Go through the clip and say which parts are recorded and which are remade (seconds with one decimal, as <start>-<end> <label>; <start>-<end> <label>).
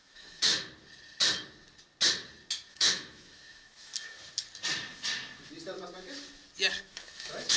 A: 0.0-0.5 remade; 0.5-2.7 recorded; 2.7-3.9 remade; 3.9-6.8 recorded; 6.8-7.6 remade